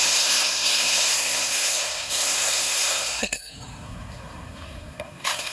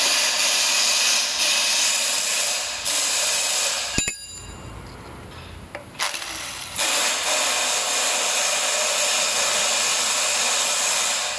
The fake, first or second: first